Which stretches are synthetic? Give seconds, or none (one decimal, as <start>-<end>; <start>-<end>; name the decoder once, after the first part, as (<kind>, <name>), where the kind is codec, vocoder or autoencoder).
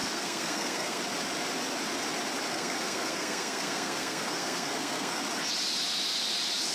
0.0-1.0 (codec, SNAC); 2.5-5.2